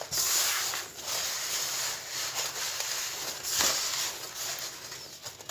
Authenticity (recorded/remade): recorded